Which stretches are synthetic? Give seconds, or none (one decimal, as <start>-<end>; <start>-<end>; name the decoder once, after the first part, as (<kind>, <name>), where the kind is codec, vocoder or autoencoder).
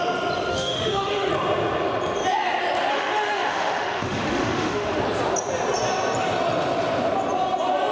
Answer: 0.5-1.3 (autoencoder, DAC-VAE); 2.9-5.0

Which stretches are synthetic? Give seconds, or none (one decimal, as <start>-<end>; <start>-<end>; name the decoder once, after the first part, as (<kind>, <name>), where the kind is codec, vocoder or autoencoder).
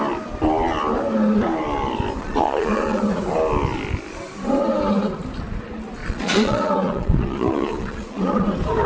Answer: 2.2-3.0 (vocoder, Vocos); 6.0-8.5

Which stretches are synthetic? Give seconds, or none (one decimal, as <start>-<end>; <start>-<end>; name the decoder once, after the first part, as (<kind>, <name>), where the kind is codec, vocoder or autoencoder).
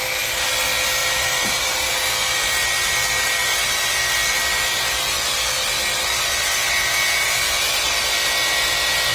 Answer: 1.0-2.1 (vocoder, BigVGAN v2)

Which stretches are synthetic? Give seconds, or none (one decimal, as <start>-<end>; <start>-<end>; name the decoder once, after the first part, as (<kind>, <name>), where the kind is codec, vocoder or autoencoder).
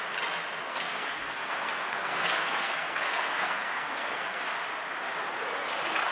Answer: 0.7-4.4 (codec, SNAC)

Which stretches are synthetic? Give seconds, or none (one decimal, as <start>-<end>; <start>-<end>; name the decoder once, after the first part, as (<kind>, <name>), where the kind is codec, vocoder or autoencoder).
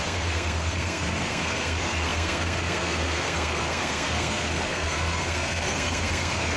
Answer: 0.0-6.6 (codec, SNAC)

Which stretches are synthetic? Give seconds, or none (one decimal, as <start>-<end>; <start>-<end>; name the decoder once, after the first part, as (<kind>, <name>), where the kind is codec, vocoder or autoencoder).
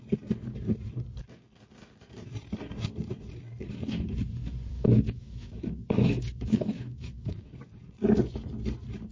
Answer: 4.7-7.5 (autoencoder, DAC-VAE)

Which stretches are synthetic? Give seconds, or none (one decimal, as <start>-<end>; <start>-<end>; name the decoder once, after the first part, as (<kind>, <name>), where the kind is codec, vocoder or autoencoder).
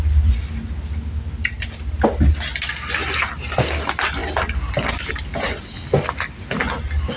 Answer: none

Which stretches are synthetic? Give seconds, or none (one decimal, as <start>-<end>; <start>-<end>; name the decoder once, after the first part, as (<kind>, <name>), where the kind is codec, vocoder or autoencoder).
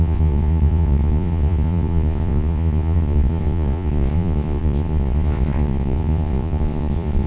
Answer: 0.0-7.3 (vocoder, Vocos)